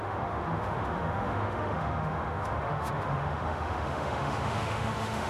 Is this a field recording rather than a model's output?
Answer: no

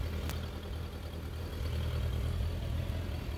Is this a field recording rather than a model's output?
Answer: yes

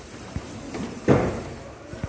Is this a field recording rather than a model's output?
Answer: yes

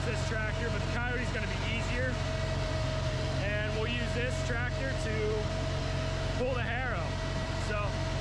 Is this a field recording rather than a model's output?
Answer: yes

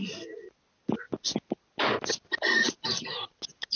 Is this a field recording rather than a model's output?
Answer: yes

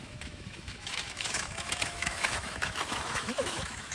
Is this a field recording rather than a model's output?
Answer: no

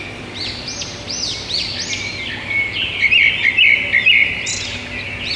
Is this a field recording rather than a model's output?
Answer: yes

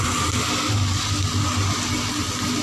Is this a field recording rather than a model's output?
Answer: yes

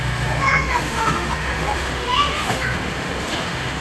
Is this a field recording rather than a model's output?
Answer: no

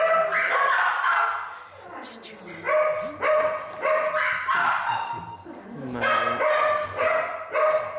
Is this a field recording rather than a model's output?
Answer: yes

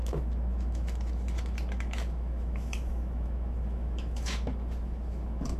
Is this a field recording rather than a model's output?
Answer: no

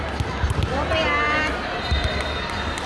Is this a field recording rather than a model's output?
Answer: yes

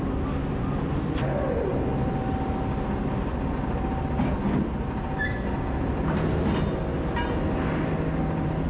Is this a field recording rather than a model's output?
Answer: yes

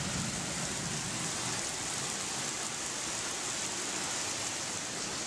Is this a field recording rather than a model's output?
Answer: yes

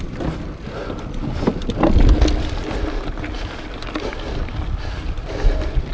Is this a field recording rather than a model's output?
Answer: yes